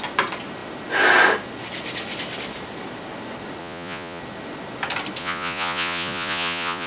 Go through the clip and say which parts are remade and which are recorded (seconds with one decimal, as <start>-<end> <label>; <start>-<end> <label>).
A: 0.0-3.6 recorded; 3.6-4.2 remade; 4.2-5.2 recorded; 5.2-6.9 remade